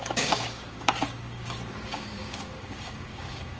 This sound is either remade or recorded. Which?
remade